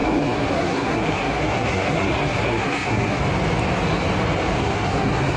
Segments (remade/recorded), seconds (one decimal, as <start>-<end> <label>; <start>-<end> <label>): 0.0-3.2 remade; 3.2-4.6 recorded; 4.6-5.4 remade